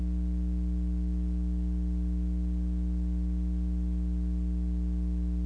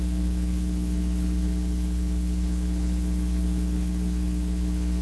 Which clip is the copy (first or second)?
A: second